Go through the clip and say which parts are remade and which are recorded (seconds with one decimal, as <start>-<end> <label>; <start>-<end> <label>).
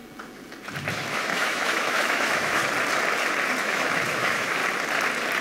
0.0-0.9 recorded; 0.9-2.6 remade; 2.6-3.6 recorded; 3.6-4.6 remade; 4.6-5.4 recorded